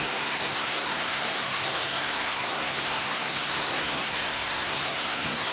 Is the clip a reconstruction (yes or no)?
yes